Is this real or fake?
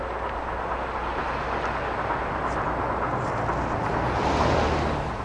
real